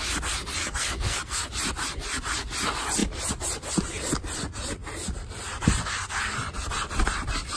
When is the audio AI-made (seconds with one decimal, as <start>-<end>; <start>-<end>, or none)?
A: 0.6-1.5